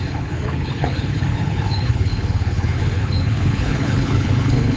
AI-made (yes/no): yes